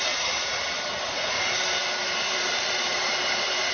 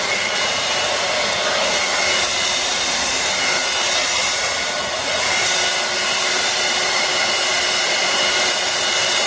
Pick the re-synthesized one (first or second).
first